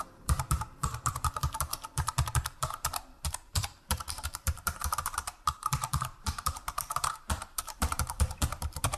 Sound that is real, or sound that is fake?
fake